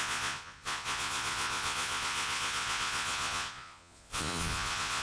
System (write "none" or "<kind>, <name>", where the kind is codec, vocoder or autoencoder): vocoder, Vocos